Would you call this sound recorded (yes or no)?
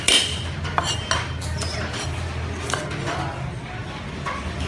yes